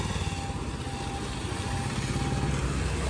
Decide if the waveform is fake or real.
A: real